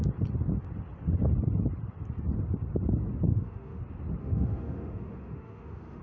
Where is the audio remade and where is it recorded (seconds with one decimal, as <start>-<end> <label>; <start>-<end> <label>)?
0.0-3.3 recorded; 3.3-3.8 remade; 3.8-4.2 recorded; 4.2-6.0 remade

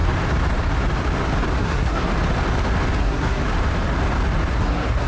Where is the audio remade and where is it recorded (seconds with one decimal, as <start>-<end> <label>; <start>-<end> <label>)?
0.0-1.6 recorded; 1.6-2.1 remade; 2.1-3.0 recorded; 3.0-3.4 remade; 3.4-4.5 recorded; 4.5-5.1 remade